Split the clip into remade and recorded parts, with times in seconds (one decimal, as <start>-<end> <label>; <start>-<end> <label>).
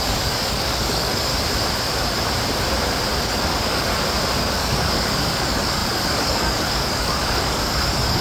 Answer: 0.0-1.3 remade; 1.3-3.2 recorded; 3.2-3.9 remade; 3.9-4.4 recorded; 4.4-8.2 remade